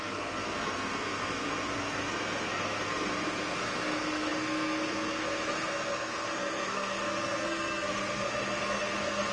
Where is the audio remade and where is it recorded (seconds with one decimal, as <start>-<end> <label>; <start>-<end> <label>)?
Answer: 0.0-9.3 remade